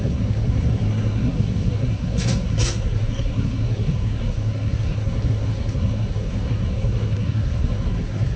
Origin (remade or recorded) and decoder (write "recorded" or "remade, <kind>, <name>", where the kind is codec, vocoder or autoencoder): remade, codec, SNAC